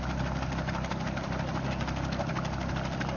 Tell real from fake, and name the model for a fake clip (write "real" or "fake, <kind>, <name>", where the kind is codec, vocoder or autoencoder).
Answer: real